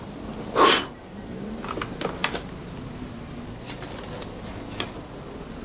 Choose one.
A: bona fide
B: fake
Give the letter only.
A